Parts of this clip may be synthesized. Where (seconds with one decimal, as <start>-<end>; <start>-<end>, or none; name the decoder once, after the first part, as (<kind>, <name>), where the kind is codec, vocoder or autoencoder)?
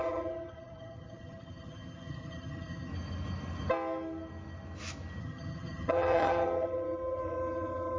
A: 0.0-2.9 (vocoder, HiFi-GAN); 5.2-8.0